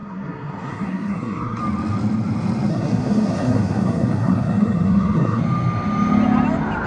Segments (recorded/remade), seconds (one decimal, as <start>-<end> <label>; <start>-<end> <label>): 0.0-1.6 remade; 1.6-2.7 recorded; 2.7-5.4 remade; 5.4-6.9 recorded